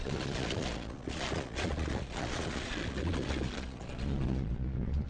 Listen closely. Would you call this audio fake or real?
fake